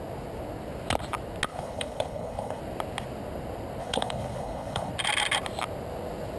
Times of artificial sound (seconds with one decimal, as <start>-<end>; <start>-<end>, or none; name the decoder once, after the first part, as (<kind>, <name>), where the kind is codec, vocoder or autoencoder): 1.5-2.6 (codec, HILCodec); 3.8-4.9